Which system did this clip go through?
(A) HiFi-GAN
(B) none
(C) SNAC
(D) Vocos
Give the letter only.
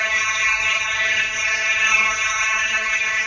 C